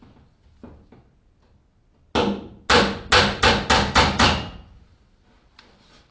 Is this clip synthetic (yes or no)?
no